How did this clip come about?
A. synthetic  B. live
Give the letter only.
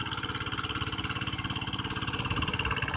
B